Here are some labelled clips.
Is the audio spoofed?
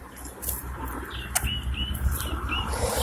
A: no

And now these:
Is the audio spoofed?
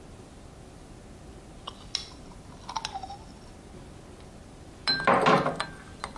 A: no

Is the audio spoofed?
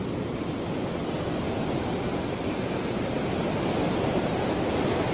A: no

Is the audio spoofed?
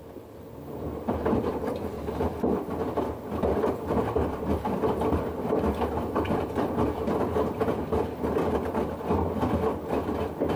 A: no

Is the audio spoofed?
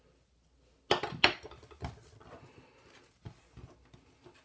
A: no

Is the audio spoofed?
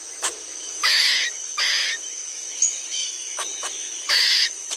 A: yes